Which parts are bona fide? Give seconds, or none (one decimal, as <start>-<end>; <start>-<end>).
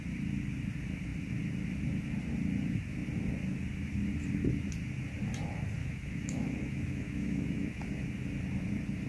0.0-5.8; 7.8-9.1